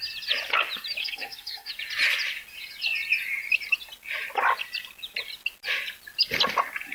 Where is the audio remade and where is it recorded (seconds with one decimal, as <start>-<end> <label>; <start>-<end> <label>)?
0.0-1.0 recorded; 1.0-1.7 remade; 1.7-6.9 recorded